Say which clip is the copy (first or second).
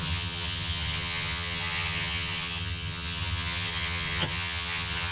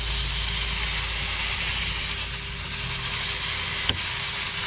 first